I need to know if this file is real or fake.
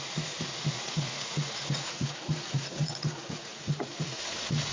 fake